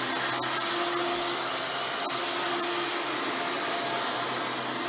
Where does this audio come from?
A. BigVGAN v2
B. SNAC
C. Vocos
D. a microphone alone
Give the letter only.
D